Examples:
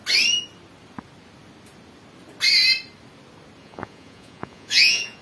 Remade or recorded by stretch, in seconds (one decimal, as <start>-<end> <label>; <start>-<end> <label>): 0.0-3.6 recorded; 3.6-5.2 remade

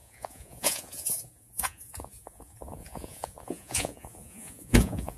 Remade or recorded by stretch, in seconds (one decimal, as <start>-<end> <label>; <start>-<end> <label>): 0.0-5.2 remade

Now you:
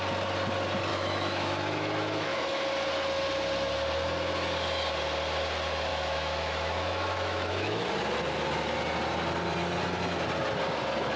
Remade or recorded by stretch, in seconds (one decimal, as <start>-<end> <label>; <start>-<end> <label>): 0.0-0.9 recorded; 0.9-2.6 remade; 2.6-5.9 recorded; 5.9-7.9 remade; 7.9-11.2 recorded

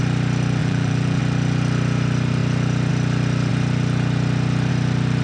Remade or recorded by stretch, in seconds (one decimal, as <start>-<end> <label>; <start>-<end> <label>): 0.0-0.6 recorded; 0.6-1.2 remade; 1.2-5.2 recorded

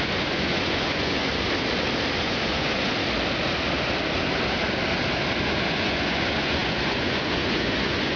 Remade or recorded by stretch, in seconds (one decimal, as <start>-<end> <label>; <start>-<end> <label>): 0.0-1.3 remade; 1.3-2.2 recorded; 2.2-2.9 remade; 2.9-5.4 recorded; 5.4-8.2 remade

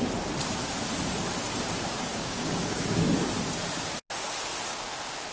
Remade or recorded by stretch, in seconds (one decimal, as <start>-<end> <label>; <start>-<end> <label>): 0.0-2.1 recorded; 2.1-3.1 remade; 3.1-5.3 recorded